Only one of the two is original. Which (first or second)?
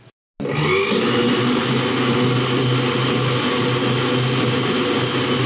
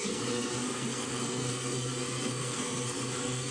first